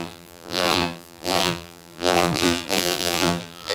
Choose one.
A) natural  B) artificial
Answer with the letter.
B